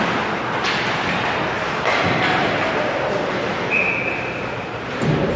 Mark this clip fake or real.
real